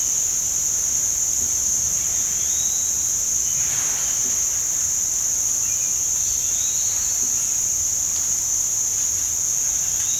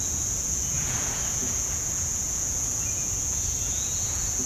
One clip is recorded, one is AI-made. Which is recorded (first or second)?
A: first